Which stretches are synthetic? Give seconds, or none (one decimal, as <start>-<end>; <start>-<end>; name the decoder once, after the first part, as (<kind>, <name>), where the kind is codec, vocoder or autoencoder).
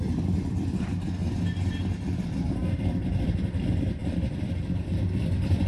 0.0-1.2 (vocoder, BigVGAN v2); 2.2-2.6; 3.2-5.7